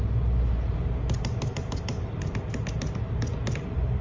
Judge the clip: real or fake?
real